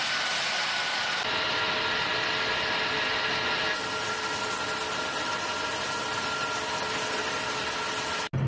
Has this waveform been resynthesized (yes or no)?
no